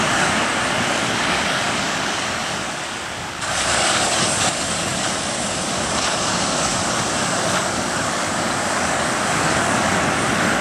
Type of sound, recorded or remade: remade